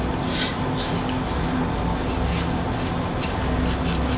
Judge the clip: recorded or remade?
recorded